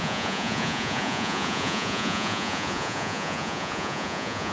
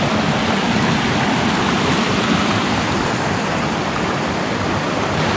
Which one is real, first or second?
second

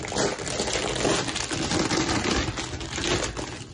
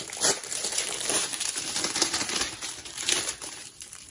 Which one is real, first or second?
first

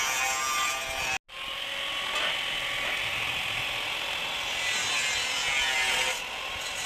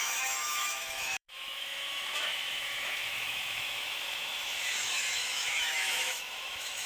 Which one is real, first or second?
first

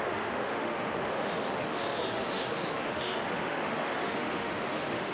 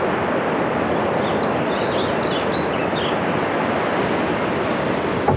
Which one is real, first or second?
second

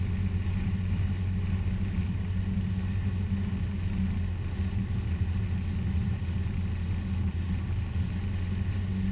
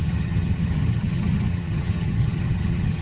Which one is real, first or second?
first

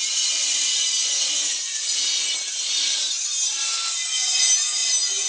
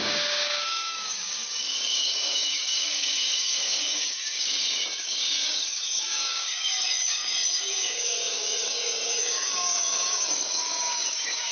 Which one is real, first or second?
first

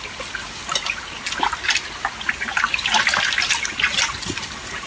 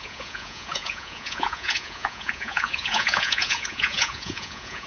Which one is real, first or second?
first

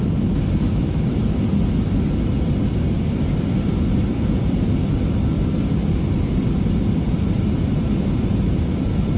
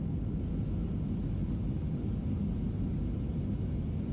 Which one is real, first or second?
second